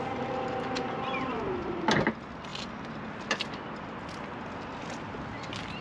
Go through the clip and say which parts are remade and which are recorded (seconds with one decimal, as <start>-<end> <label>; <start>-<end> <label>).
0.0-5.8 recorded